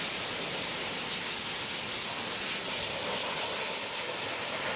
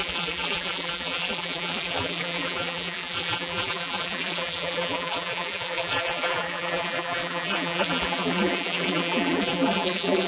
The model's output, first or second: second